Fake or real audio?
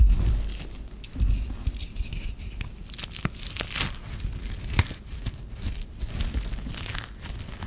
real